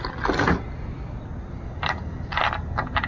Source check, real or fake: real